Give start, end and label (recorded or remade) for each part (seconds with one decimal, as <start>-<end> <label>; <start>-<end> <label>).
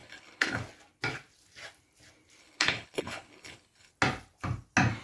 0.0-0.6 remade; 0.6-2.4 recorded; 2.4-3.9 remade; 3.9-5.0 recorded